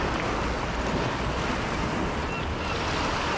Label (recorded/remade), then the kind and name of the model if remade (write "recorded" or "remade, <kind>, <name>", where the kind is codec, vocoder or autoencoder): recorded